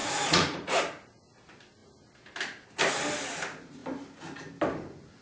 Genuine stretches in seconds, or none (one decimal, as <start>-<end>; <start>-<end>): 0.8-5.2